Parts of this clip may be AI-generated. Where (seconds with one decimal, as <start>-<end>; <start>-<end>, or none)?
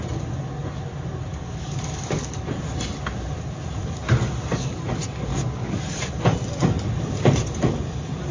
1.3-2.5; 5.3-5.8